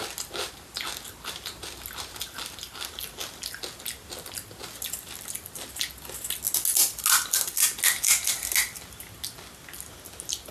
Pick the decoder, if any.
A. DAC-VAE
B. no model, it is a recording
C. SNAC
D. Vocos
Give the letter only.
B